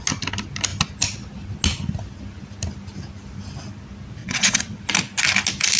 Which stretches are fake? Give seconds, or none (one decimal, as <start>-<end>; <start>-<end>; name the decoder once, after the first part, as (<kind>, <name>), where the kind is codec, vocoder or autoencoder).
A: 4.2-4.8 (vocoder, WaveNeXt)